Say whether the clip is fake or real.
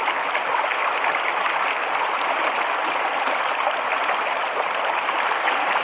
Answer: real